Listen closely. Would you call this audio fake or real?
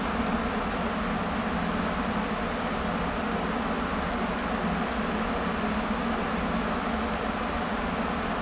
real